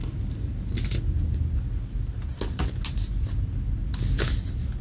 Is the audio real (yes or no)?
yes